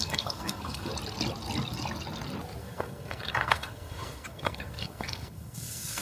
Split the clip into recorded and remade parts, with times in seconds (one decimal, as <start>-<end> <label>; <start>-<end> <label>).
0.0-0.9 remade; 0.9-2.6 recorded; 2.6-6.0 remade